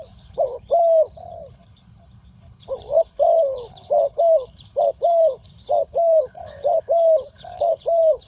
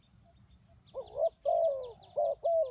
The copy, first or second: first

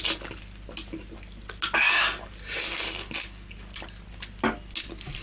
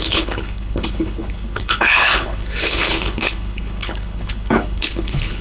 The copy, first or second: second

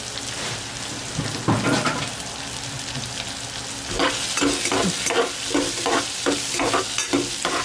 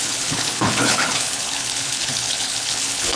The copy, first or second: second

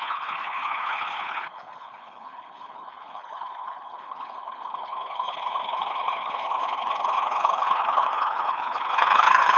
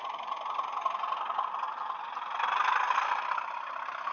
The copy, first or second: first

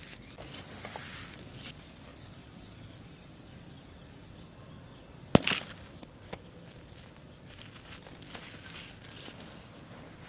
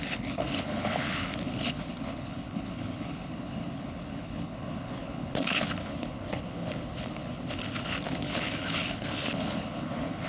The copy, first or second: second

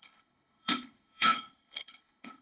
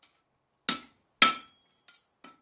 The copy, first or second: first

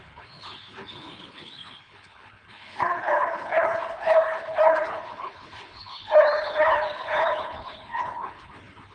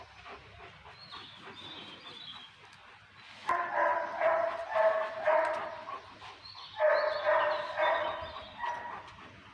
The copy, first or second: first